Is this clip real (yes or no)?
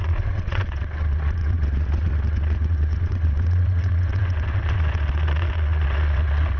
no